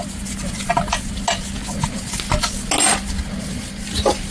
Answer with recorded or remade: recorded